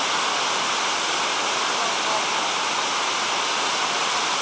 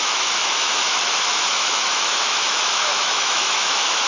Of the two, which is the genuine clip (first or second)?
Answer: first